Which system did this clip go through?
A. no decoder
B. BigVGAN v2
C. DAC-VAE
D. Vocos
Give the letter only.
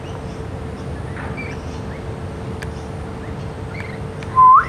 A